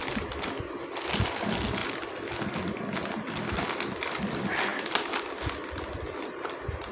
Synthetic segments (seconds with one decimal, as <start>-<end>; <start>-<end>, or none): none